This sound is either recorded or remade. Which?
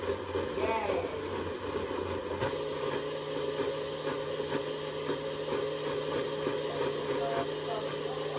recorded